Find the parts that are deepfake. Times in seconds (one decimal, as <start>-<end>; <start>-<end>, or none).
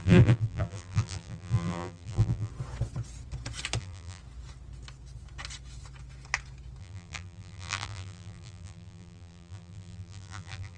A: 0.0-2.5; 3.8-4.2; 6.8-10.8